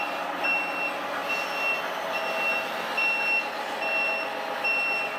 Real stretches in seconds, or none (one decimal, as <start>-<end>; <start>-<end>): 0.0-5.2